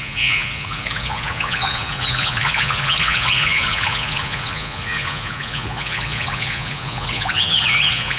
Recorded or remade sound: remade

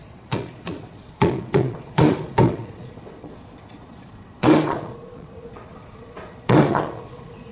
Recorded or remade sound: remade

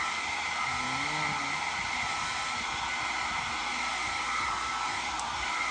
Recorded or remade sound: recorded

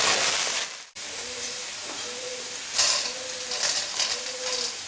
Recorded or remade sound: recorded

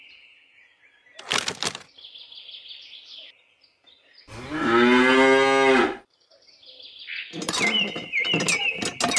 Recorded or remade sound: recorded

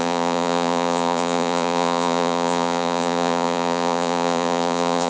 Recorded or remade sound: remade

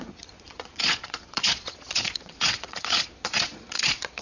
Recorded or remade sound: remade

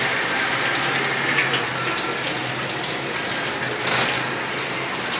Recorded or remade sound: recorded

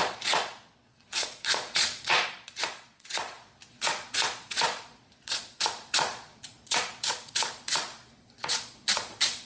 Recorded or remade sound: remade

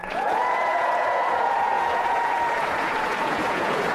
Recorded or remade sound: remade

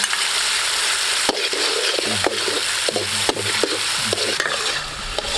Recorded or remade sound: recorded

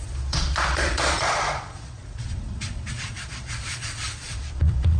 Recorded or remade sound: remade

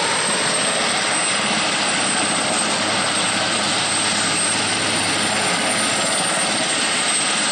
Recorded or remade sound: recorded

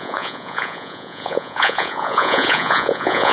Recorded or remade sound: remade